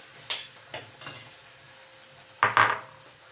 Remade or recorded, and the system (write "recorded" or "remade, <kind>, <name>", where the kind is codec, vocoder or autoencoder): recorded